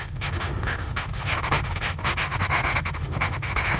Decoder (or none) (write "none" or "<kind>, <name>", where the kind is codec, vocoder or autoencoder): autoencoder, DAC-VAE